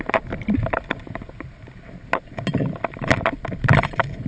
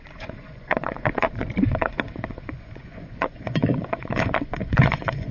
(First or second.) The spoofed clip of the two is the second